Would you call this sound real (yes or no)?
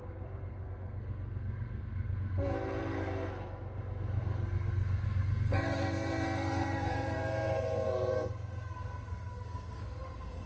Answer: no